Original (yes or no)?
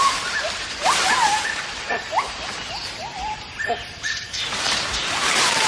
no